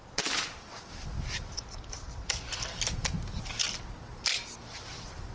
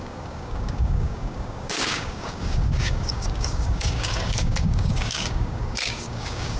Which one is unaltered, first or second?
first